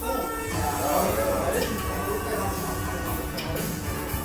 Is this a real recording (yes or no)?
no